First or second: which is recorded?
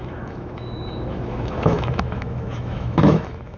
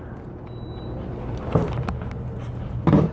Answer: second